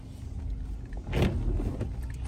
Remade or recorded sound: recorded